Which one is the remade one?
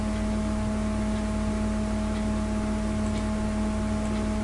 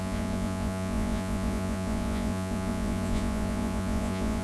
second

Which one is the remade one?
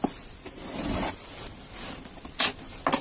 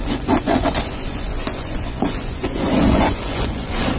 second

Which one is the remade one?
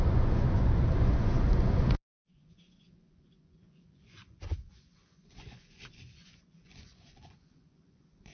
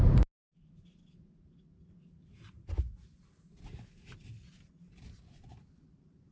first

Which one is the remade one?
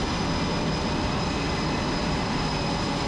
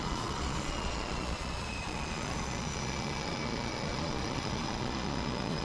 second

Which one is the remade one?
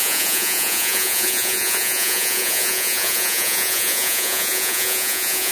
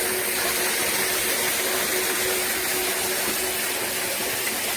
first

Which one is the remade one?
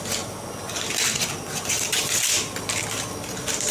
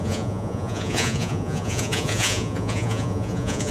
second